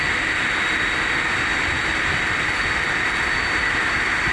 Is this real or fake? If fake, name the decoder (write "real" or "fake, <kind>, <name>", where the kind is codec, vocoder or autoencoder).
real